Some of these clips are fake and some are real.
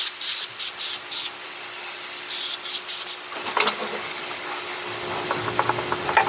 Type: real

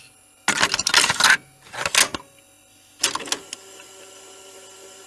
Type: real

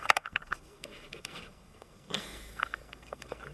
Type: fake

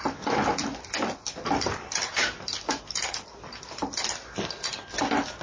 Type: real